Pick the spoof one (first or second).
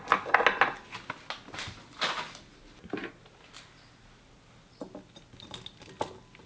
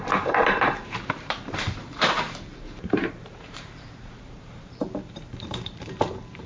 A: second